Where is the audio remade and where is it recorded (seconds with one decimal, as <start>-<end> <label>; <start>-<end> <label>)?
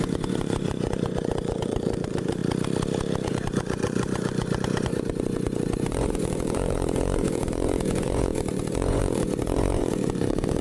0.0-2.4 remade; 2.4-3.3 recorded; 3.3-10.6 remade